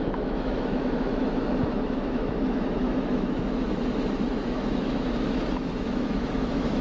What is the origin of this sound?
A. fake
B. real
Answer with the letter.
A